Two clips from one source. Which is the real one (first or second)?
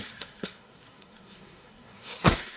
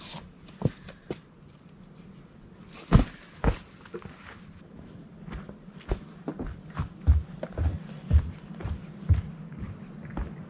second